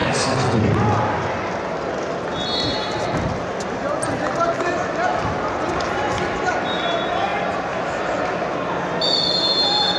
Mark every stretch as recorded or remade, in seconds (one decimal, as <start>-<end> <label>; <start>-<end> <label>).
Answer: 0.0-0.6 remade; 0.6-10.0 recorded